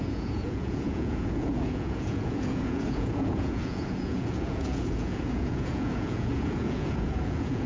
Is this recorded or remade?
remade